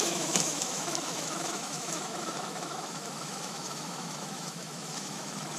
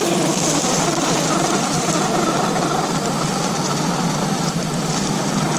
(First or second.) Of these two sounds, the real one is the second